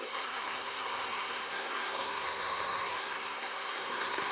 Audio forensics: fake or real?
fake